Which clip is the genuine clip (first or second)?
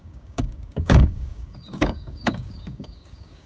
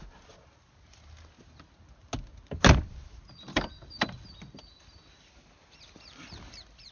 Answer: second